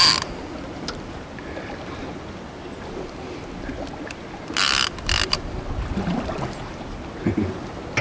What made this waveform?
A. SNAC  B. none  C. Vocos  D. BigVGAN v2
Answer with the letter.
B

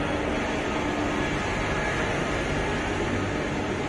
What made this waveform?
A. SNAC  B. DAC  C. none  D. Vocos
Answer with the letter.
C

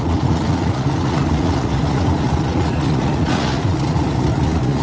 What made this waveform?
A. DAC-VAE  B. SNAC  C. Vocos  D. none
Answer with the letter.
C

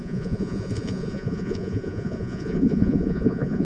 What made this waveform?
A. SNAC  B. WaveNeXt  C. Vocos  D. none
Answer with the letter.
C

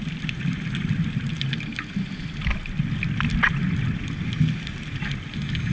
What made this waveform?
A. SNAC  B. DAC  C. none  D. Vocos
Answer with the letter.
C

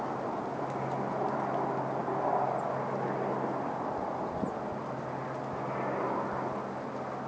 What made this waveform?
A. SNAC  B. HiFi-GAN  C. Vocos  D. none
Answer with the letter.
D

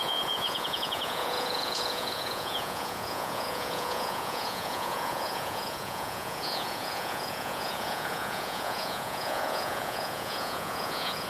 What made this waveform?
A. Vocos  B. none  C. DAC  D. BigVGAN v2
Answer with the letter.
A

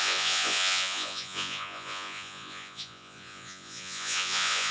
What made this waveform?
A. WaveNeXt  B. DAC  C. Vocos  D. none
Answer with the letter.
C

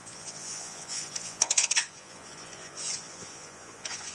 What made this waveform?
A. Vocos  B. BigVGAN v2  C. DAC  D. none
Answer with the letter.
A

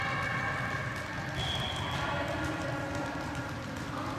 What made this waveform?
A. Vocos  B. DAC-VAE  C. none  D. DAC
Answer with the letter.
C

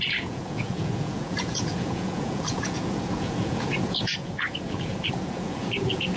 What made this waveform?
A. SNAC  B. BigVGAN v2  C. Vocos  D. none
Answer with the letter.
C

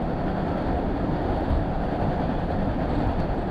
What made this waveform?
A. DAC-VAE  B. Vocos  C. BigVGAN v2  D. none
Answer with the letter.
D